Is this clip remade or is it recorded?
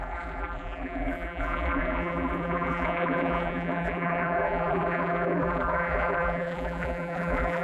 remade